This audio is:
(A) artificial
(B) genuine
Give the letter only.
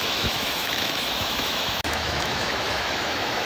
A